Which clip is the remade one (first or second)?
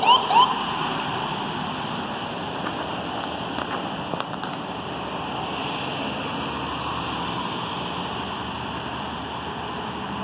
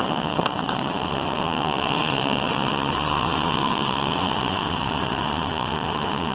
second